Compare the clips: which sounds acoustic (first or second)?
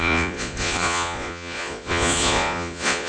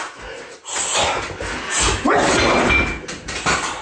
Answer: second